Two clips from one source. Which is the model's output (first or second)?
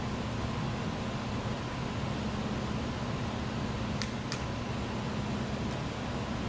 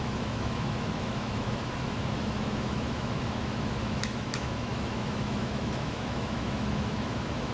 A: second